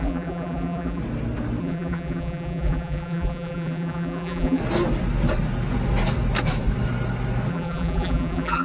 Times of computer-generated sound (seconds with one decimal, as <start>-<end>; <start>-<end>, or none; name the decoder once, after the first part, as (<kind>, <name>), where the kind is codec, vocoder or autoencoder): 0.0-1.0 (vocoder, BigVGAN v2); 1.6-4.6; 7.5-8.6